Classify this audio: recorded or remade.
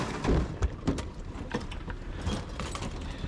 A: remade